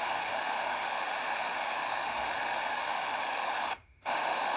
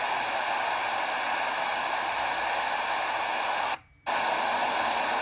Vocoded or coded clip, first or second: first